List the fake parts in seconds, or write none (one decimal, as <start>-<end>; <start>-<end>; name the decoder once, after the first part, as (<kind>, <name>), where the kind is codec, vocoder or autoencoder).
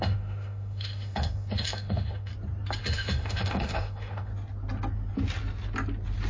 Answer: 0.0-2.3 (autoencoder, DAC-VAE); 2.8-4.3